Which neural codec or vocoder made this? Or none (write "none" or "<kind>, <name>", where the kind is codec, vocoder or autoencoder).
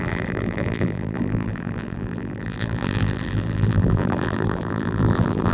vocoder, BigVGAN v2